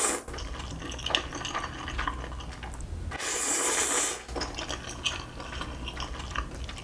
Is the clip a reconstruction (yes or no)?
no